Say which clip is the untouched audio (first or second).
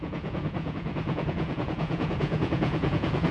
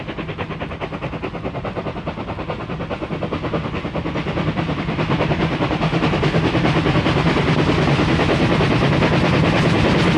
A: second